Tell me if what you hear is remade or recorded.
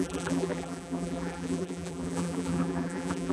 remade